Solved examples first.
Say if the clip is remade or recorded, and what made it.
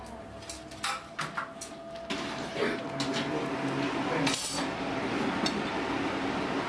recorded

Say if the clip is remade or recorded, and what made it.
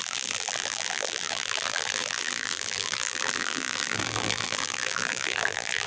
remade, vocoder, BigVGAN v2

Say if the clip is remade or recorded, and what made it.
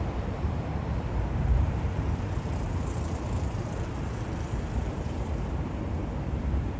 remade, vocoder, BigVGAN v2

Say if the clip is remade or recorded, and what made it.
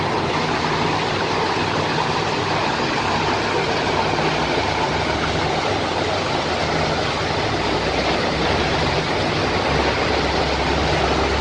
recorded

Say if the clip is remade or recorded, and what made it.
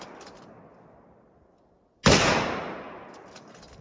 recorded